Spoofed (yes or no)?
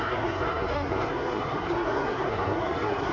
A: yes